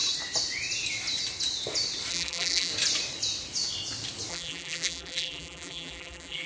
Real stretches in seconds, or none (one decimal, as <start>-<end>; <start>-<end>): 0.0-2.1; 2.7-4.3